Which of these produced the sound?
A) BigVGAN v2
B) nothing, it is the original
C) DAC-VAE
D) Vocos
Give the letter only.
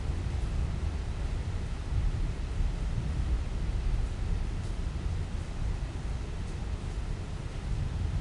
B